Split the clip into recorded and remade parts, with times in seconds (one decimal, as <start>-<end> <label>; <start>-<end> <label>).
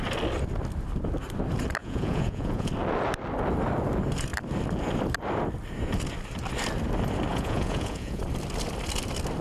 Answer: 0.0-1.8 recorded; 1.8-2.7 remade; 2.7-7.3 recorded; 7.3-8.2 remade; 8.2-9.4 recorded